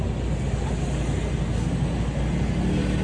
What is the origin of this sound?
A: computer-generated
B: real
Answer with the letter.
B